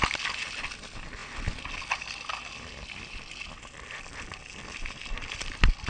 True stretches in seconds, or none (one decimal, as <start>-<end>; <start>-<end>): 0.0-5.9